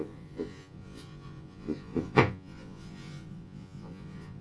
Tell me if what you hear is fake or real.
fake